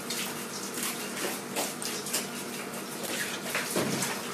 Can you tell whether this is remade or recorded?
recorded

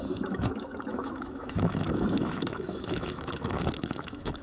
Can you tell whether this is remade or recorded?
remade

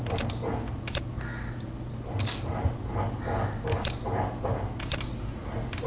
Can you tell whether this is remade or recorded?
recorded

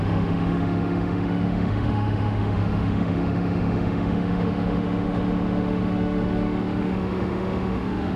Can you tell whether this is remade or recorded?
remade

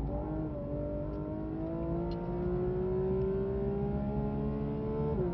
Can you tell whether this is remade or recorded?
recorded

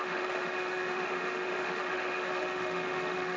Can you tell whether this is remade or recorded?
remade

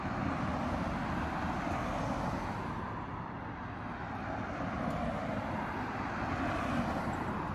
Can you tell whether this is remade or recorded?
recorded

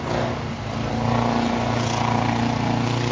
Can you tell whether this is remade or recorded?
recorded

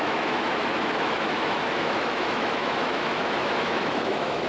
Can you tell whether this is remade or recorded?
remade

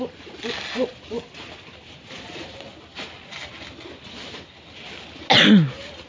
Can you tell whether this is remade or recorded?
recorded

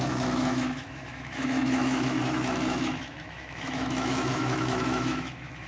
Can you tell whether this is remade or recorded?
remade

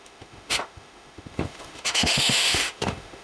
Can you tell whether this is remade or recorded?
remade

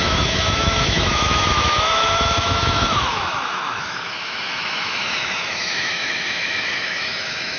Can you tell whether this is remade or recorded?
remade